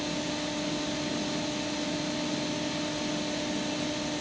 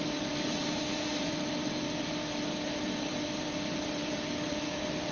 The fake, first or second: second